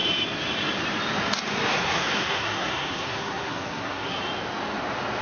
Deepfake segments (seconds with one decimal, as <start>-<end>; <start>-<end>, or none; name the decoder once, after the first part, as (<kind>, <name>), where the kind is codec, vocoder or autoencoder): 1.7-4.2 (codec, SNAC)